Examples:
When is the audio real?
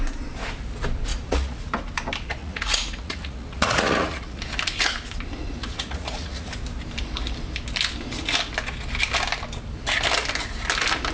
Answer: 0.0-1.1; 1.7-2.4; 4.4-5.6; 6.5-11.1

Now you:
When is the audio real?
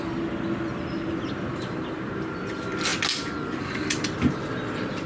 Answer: 0.0-5.1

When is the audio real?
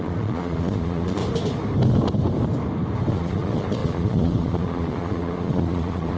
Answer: 1.2-3.1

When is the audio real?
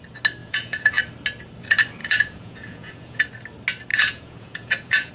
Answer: 0.0-0.4; 1.0-2.0; 3.2-3.9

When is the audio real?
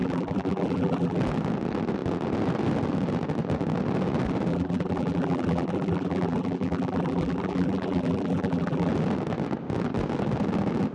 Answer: 1.2-4.5; 8.9-10.9